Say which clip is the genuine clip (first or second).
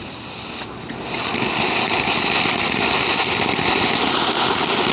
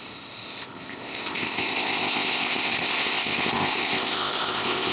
first